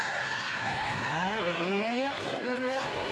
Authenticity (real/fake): fake